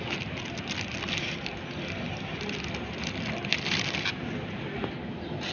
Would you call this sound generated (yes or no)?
no